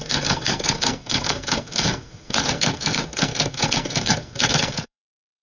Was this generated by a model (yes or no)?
yes